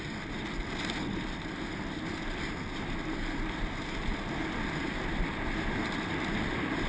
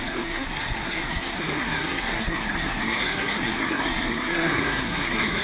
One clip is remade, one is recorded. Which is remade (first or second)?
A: second